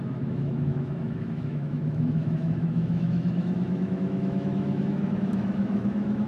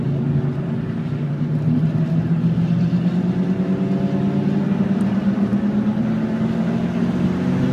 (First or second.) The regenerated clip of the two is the first